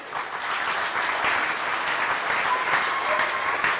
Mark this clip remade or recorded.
recorded